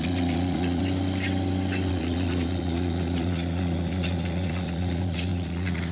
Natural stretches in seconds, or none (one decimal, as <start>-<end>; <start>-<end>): 0.8-1.9